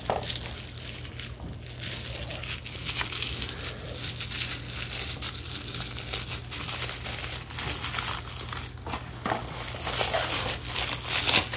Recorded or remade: recorded